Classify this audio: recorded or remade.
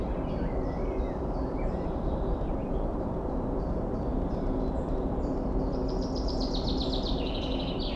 remade